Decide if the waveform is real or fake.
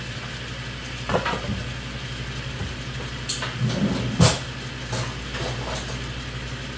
real